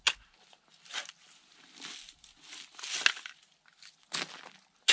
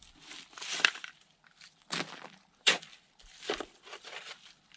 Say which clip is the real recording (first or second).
first